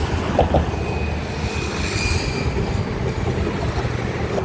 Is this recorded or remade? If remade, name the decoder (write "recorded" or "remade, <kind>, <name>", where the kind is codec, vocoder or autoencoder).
recorded